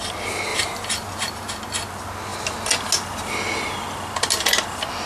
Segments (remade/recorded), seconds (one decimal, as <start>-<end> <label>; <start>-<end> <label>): 0.0-0.5 recorded; 0.5-1.5 remade; 1.5-5.1 recorded